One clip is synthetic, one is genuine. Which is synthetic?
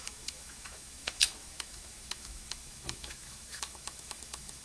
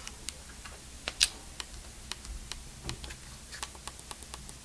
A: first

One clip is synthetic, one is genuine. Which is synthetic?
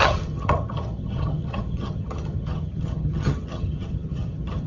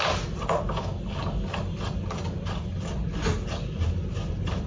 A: first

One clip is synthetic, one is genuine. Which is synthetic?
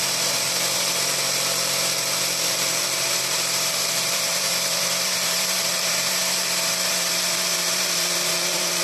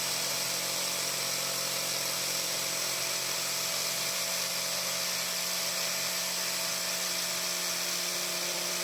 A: first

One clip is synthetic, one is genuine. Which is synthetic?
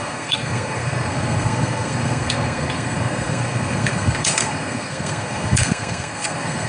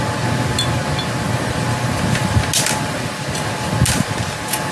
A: first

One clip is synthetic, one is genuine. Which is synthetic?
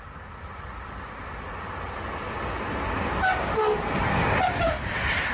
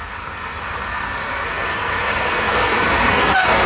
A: second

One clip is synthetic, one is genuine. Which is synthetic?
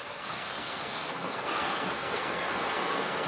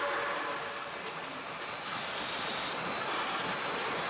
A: first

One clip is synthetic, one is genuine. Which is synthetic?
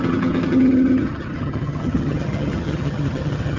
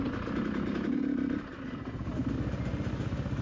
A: first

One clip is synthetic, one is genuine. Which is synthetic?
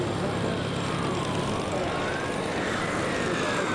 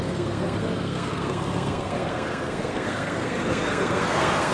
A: second